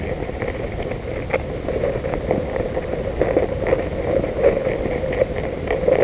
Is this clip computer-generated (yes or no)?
no